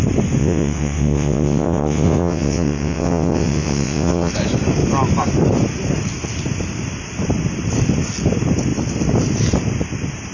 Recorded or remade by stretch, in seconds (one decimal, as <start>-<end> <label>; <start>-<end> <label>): 0.0-0.4 recorded; 0.4-4.3 remade; 4.3-10.3 recorded